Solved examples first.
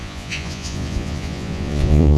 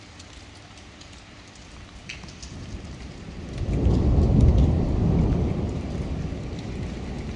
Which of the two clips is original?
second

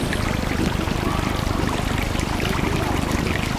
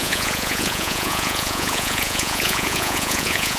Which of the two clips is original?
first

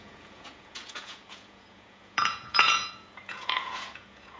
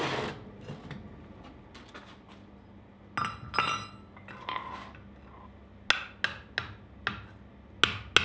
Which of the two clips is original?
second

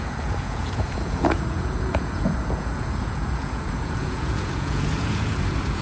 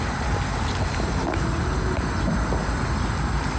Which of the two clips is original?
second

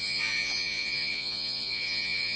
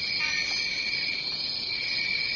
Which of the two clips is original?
second